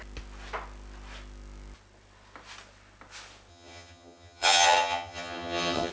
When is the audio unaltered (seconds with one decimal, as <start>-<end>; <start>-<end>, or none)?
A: 0.0-3.5